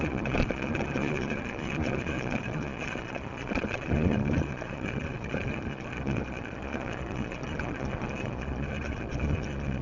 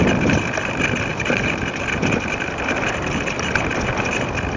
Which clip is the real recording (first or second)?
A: second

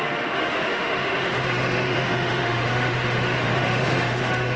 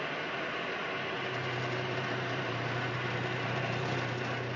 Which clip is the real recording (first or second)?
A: second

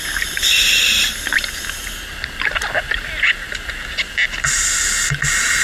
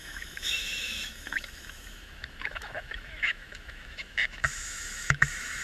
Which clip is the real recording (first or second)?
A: first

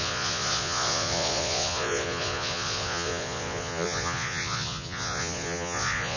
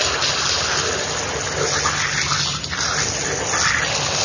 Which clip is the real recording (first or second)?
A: second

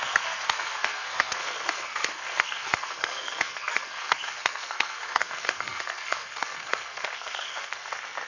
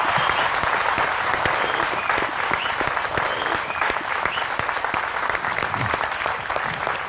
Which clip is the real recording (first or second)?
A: second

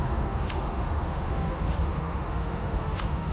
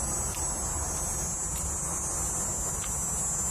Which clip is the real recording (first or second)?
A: second